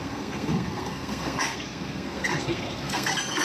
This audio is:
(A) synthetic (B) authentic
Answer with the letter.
A